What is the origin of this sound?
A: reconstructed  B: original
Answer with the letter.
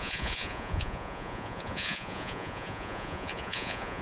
A